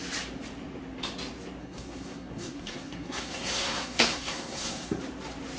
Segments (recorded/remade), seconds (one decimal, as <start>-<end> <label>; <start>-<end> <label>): 0.0-1.6 recorded; 1.6-5.0 remade; 5.0-5.6 recorded